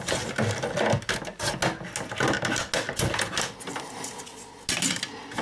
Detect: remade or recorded recorded